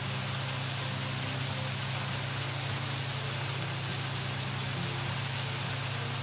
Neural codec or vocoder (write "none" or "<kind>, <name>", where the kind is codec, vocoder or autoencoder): none